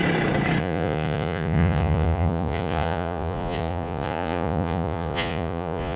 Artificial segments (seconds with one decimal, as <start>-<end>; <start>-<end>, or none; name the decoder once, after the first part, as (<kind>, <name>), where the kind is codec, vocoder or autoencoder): 0.6-6.0 (vocoder, Vocos)